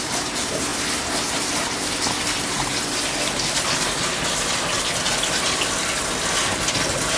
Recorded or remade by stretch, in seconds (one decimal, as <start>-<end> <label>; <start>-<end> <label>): 0.0-7.2 recorded